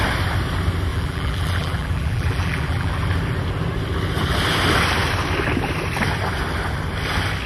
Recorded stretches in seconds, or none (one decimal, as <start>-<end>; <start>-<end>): 0.0-0.9; 2.9-7.5